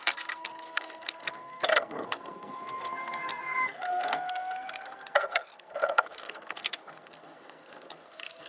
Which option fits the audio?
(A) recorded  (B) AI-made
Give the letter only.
B